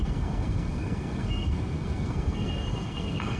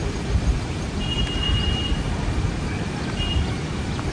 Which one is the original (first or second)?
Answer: second